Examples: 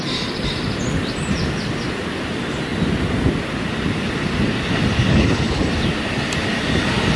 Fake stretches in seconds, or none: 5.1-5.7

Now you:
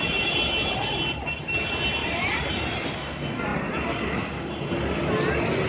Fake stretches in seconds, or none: 2.0-2.9

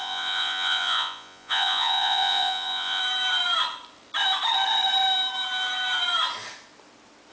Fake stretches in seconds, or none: 0.0-3.0

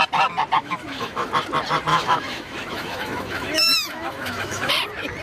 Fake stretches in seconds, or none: 0.6-1.3; 1.9-4.7

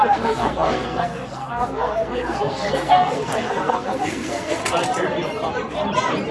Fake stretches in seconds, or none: 0.0-4.6